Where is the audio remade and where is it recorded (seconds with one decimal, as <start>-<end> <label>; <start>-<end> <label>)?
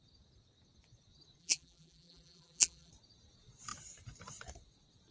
0.0-1.4 recorded; 1.4-2.9 remade; 2.9-5.1 recorded